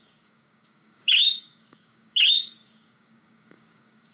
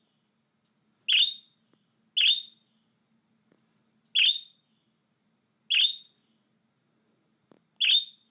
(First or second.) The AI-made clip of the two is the first